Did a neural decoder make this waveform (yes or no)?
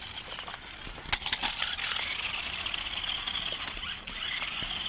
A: no